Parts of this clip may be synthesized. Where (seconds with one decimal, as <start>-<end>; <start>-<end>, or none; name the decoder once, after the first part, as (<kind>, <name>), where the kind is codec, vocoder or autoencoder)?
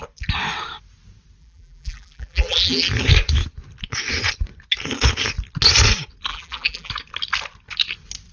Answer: 1.4-2.9 (vocoder, BigVGAN v2); 6.3-6.9